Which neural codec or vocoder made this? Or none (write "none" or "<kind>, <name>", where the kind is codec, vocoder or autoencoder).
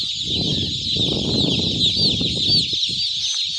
none